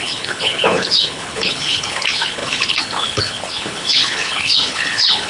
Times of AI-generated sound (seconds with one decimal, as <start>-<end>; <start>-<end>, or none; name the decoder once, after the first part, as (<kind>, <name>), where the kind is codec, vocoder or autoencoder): 0.0-5.3 (codec, HILCodec)